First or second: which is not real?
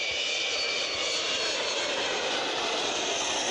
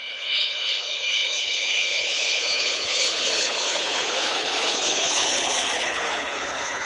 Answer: second